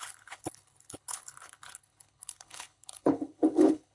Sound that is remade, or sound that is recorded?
remade